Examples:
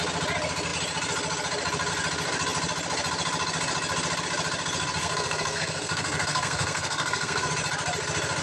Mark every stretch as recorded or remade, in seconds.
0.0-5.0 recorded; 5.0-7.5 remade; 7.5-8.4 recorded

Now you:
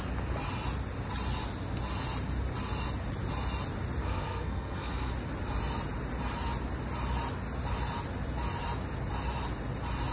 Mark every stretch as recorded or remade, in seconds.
0.0-4.0 recorded; 4.0-5.1 remade; 5.1-10.1 recorded

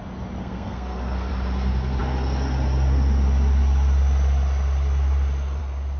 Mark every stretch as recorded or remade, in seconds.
0.0-0.4 recorded; 0.4-1.3 remade; 1.3-6.0 recorded

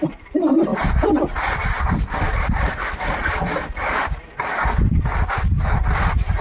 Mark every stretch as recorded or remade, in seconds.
0.0-6.4 recorded